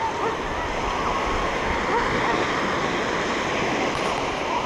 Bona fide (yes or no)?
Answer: yes